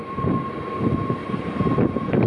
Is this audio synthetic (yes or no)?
yes